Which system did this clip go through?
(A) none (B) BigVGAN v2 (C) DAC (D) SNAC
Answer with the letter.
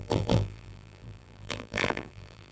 B